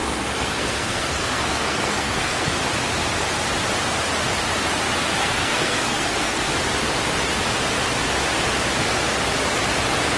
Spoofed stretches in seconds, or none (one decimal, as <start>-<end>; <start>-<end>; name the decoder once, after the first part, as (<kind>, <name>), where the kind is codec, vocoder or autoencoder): 0.0-2.5 (codec, SNAC); 5.2-6.4

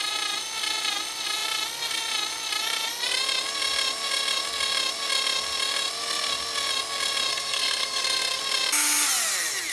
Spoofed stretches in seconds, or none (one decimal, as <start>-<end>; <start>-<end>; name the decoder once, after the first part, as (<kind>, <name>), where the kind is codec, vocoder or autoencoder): 7.3-8.4 (codec, SNAC)

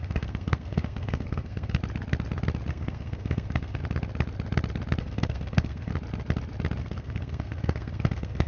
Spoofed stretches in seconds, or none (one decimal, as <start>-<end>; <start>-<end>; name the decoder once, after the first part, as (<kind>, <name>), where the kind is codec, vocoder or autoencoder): 0.0-1.8 (codec, SNAC); 2.7-3.8; 5.0-5.9; 6.8-8.5

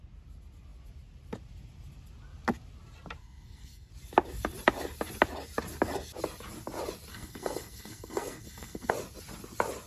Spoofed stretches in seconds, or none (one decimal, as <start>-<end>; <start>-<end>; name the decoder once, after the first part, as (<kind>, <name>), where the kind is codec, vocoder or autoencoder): 3.2-3.9 (codec, SNAC); 7.1-8.9

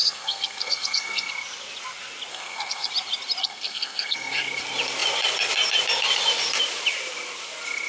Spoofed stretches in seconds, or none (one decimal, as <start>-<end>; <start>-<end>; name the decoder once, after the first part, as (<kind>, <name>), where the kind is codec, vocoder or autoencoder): 0.0-1.3 (codec, SNAC); 2.3-2.9; 3.4-4.3

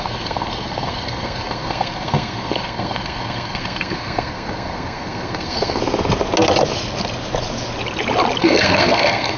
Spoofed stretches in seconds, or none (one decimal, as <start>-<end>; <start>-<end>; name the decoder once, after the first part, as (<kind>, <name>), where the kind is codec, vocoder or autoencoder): 0.0-5.8 (codec, SNAC); 8.4-9.4